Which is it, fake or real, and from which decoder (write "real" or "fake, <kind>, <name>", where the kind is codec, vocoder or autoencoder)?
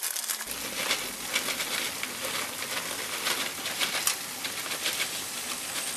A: real